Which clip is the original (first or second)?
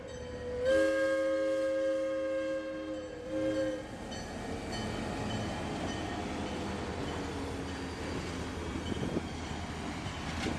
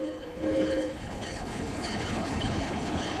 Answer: first